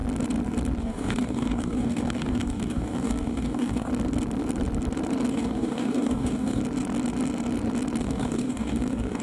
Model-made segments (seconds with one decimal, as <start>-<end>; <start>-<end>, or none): 0.8-3.9; 5.3-6.6; 8.0-9.2